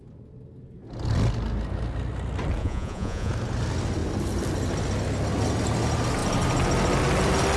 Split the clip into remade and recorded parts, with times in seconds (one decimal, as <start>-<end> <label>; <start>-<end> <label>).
0.0-2.6 recorded; 2.6-3.3 remade; 3.3-7.6 recorded